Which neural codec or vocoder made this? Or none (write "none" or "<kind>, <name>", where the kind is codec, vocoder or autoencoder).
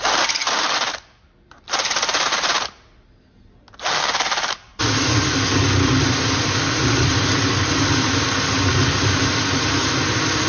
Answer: none